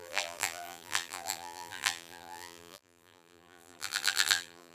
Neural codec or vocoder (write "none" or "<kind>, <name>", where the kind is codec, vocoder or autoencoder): vocoder, BigVGAN v2